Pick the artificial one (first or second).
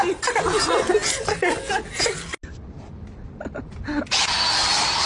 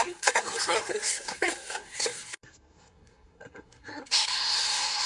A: second